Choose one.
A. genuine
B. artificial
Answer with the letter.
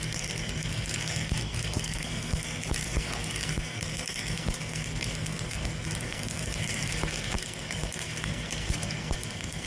B